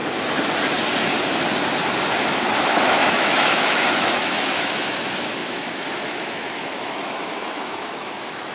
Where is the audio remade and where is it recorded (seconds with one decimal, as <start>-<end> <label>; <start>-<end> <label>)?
0.0-2.6 recorded; 2.6-8.5 remade